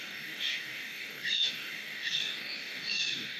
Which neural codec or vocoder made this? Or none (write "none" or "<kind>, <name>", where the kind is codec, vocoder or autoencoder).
codec, DAC